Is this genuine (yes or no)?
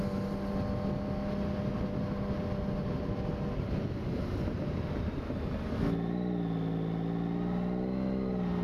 yes